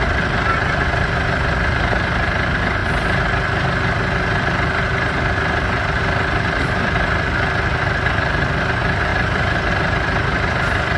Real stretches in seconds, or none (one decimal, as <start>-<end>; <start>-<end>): 0.0-9.1; 9.7-11.0